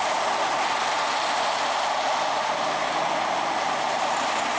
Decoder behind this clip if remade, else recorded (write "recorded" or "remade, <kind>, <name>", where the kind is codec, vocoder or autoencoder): recorded